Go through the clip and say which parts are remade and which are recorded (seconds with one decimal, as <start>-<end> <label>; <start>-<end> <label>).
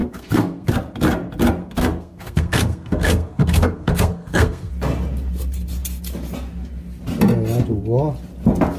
0.0-0.7 remade; 0.7-1.6 recorded; 1.6-4.7 remade; 4.7-8.8 recorded